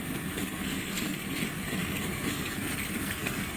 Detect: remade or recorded remade